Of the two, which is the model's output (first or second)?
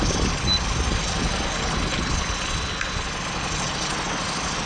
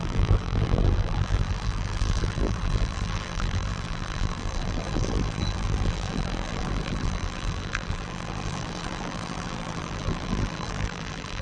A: second